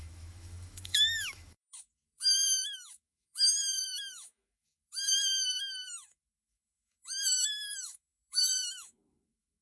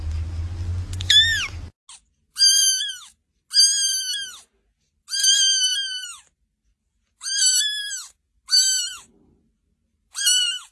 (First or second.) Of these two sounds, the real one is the second